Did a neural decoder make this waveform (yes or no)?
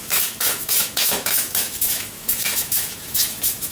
yes